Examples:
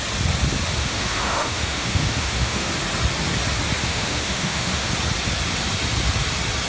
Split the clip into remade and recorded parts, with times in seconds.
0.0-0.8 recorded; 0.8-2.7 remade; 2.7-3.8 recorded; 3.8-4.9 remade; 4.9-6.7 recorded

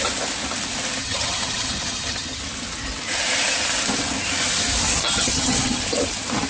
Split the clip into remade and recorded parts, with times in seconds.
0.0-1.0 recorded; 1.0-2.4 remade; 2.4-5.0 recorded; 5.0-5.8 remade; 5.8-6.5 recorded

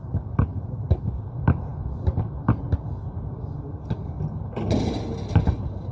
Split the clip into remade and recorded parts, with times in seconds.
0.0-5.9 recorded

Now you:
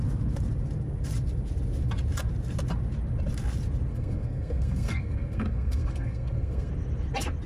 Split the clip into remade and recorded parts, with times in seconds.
0.0-3.9 recorded; 3.9-6.7 remade; 6.7-7.5 recorded

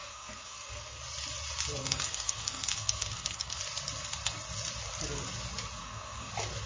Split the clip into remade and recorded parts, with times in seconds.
0.0-1.0 remade; 1.0-1.8 recorded; 1.8-3.6 remade; 3.6-5.8 recorded; 5.8-6.3 remade; 6.3-6.7 recorded